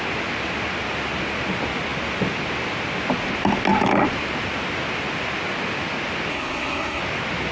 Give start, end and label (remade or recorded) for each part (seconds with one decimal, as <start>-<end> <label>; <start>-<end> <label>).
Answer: 0.0-6.3 recorded; 6.3-7.0 remade; 7.0-7.5 recorded